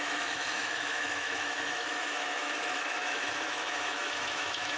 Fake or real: fake